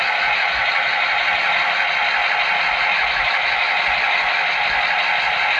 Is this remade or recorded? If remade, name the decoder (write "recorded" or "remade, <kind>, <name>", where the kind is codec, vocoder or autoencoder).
recorded